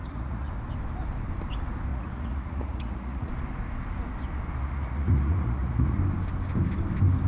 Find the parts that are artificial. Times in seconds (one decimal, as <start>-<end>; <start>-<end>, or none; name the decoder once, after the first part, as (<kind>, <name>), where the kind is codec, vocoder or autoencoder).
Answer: 0.0-0.5 (vocoder, Vocos); 1.9-3.3; 4.6-6.0